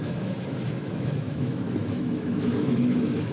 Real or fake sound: fake